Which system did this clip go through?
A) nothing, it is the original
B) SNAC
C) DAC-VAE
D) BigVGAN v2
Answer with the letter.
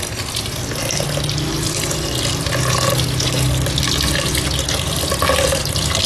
A